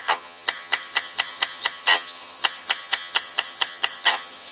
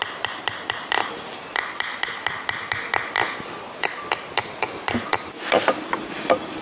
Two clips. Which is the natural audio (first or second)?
second